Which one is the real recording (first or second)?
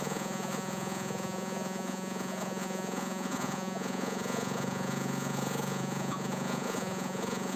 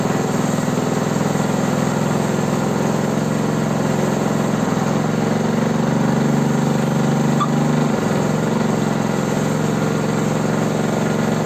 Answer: second